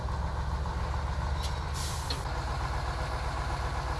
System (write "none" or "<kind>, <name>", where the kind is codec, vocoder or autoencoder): none